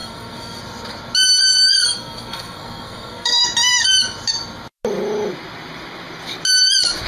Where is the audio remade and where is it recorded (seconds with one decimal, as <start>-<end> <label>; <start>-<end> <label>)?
0.0-0.6 remade; 0.6-1.7 recorded; 1.7-3.4 remade; 3.4-7.1 recorded